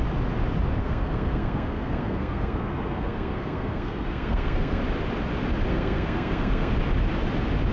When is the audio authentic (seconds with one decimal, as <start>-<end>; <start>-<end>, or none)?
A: 0.0-0.8; 4.8-5.7; 6.7-7.7